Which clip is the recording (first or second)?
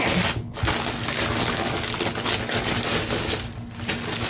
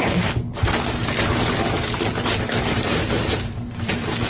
first